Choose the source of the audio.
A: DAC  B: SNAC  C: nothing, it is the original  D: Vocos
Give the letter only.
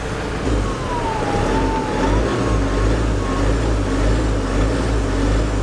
C